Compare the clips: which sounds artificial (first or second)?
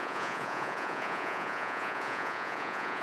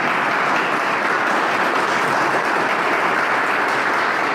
first